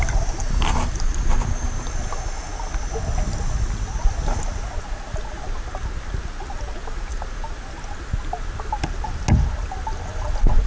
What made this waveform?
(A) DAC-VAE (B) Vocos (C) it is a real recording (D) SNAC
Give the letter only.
C